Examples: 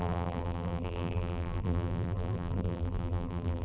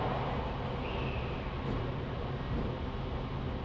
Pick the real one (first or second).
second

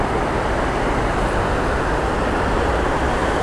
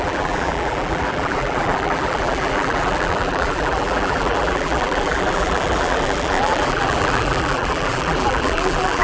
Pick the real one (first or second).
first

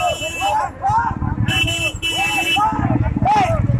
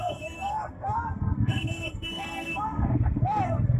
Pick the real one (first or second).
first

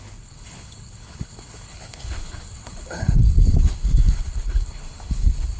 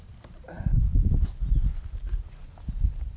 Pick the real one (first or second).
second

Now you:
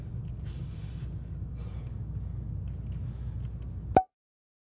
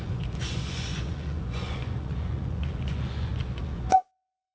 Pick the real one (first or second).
first